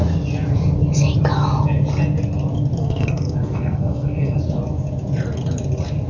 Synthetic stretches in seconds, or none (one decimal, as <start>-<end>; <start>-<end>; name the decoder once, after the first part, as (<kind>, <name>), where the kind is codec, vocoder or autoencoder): 2.8-4.4 (codec, SNAC)